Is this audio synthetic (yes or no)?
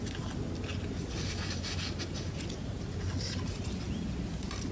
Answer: no